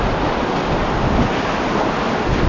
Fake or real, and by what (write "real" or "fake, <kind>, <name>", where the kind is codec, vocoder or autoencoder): real